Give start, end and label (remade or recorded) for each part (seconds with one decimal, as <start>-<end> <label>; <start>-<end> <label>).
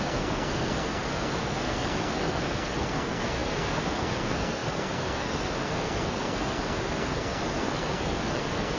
0.0-8.8 remade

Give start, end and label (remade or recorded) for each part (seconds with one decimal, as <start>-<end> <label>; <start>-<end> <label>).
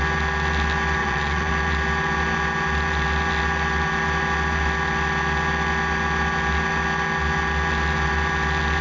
0.0-1.0 recorded; 1.0-1.5 remade; 1.5-8.8 recorded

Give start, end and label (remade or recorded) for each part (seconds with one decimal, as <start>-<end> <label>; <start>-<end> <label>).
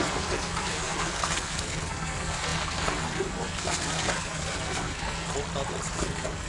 0.0-5.3 remade; 5.3-5.9 recorded; 5.9-6.5 remade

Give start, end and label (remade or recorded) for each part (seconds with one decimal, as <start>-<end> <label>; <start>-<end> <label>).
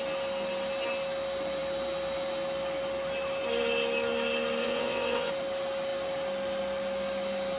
0.0-4.6 recorded; 4.6-5.3 remade; 5.3-7.6 recorded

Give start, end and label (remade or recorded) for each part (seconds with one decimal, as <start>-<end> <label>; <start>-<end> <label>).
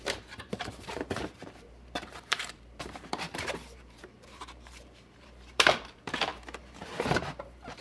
0.0-7.8 remade